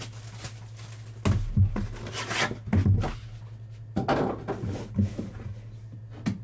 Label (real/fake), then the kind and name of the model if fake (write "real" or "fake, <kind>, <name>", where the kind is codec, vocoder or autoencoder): real